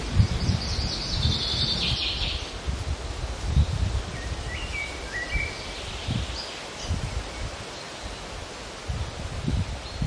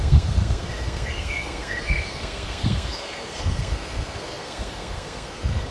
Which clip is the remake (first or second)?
second